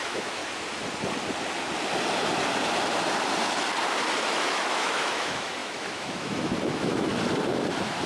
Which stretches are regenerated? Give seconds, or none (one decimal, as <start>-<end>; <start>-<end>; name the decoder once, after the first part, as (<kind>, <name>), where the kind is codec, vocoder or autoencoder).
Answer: 0.0-0.4 (autoencoder, DAC-VAE); 4.2-7.1